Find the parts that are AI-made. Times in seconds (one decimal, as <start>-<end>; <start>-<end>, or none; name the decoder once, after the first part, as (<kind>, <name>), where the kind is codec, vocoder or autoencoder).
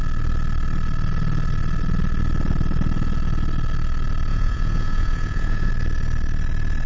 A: 4.3-5.7 (vocoder, Vocos)